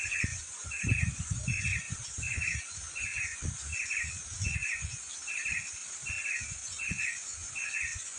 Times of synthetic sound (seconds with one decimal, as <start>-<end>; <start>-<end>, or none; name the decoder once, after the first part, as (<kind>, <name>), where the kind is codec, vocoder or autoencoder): 0.0-3.7 (vocoder, Vocos); 4.2-5.1; 6.5-8.2